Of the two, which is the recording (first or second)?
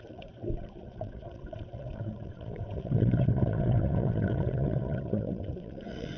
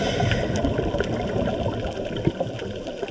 second